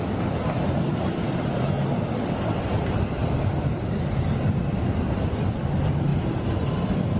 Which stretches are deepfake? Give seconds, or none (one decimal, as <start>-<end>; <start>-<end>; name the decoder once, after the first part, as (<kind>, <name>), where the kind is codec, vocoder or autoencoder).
3.2-5.6 (vocoder, BigVGAN v2); 6.1-7.2